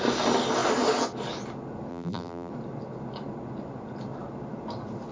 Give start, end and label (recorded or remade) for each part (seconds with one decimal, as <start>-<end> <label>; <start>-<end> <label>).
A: 0.0-1.9 recorded; 1.9-2.5 remade; 2.5-5.1 recorded